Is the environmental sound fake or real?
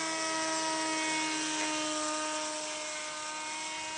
real